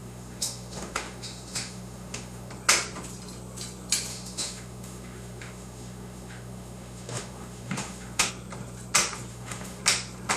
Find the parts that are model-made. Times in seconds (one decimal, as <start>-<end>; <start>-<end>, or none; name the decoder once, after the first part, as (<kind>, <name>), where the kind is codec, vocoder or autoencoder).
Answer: 0.0-2.5 (autoencoder, DAC-VAE); 4.1-8.3; 9.3-9.8